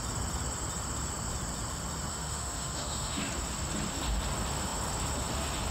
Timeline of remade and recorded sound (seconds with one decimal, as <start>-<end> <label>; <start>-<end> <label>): 0.0-2.1 recorded; 2.1-3.2 remade; 3.2-5.7 recorded